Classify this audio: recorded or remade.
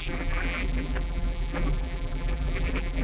remade